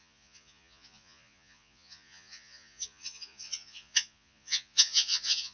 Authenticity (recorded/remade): remade